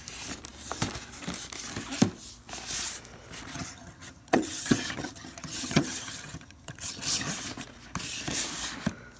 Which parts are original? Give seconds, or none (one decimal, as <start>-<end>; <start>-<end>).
0.0-3.5; 7.3-9.2

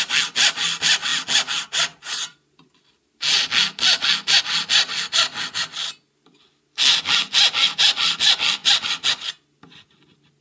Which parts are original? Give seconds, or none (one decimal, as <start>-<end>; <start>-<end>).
0.0-10.4